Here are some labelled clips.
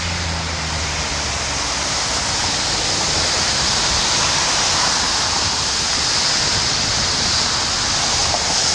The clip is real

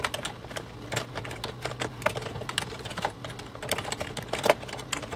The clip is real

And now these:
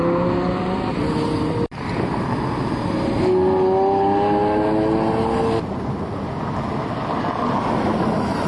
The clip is real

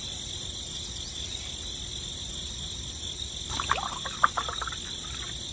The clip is real